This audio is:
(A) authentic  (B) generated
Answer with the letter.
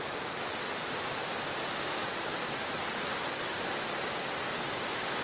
A